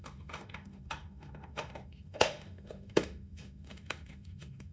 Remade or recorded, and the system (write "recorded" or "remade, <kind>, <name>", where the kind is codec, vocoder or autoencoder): remade, autoencoder, DAC-VAE